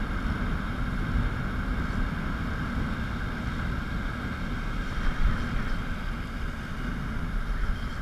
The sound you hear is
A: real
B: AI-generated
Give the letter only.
A